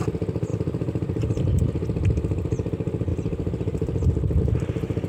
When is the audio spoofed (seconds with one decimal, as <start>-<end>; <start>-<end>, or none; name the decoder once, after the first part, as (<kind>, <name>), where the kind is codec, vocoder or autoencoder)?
0.5-1.4 (vocoder, BigVGAN v2)